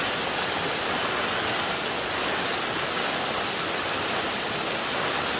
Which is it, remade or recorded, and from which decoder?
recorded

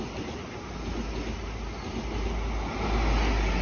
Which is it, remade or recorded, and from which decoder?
recorded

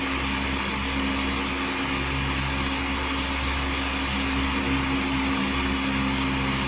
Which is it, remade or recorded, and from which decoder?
recorded